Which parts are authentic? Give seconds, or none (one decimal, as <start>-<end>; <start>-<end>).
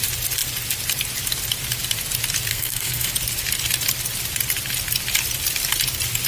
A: 0.0-2.5; 3.1-6.3